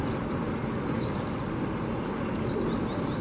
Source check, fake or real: real